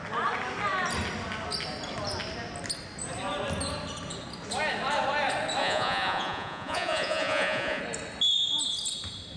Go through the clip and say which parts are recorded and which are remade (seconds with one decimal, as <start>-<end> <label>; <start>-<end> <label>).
0.0-5.6 recorded; 5.6-7.8 remade; 7.8-9.4 recorded